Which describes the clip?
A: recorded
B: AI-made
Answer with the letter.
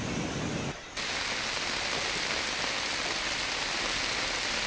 A